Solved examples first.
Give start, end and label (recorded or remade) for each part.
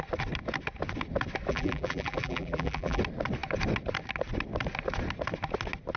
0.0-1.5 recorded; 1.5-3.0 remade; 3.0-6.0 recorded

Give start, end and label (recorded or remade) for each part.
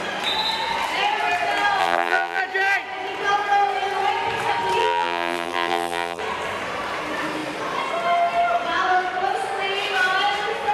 0.0-1.8 recorded; 1.8-2.4 remade; 2.4-4.8 recorded; 4.8-6.2 remade; 6.2-10.7 recorded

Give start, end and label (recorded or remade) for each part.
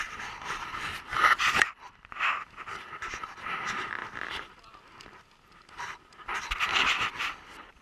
0.0-7.8 remade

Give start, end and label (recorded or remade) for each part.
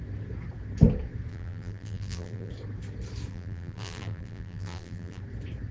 0.0-1.3 recorded; 1.3-2.5 remade; 2.5-3.3 recorded; 3.3-5.2 remade; 5.2-5.7 recorded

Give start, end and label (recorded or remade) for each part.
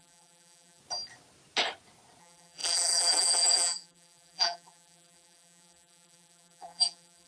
0.0-0.8 remade; 0.8-2.2 recorded; 2.2-7.3 remade